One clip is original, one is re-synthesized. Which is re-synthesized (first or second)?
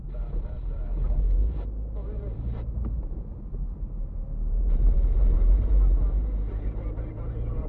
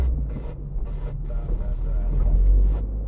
first